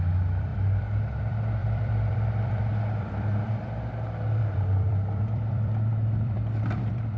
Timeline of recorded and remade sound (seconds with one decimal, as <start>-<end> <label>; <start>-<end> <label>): 0.0-7.2 remade